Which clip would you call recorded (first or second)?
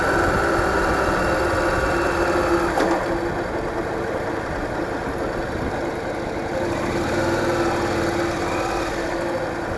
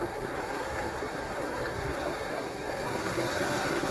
first